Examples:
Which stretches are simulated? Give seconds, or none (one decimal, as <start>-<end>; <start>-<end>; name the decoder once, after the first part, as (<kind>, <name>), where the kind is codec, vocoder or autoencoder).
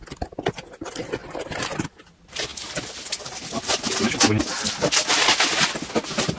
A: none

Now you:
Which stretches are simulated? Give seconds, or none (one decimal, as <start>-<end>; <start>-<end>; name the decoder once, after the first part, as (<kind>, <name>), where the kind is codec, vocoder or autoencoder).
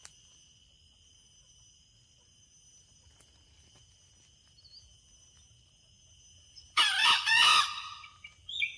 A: 7.0-7.6 (vocoder, Vocos)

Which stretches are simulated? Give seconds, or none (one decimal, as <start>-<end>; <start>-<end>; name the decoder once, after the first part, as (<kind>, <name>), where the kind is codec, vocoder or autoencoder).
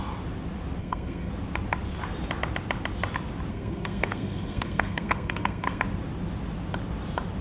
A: 0.8-1.3 (codec, SNAC); 3.5-5.8